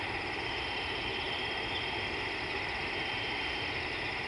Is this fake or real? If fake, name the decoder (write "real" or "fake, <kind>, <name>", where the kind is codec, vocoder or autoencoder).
real